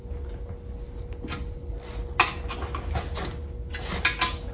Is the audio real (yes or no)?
yes